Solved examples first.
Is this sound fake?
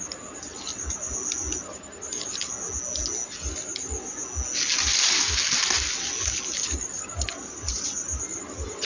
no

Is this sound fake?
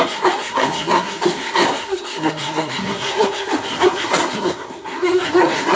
yes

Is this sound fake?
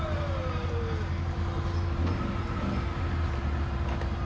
no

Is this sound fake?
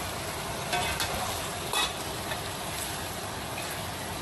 no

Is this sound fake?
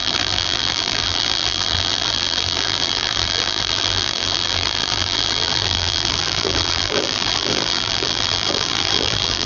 yes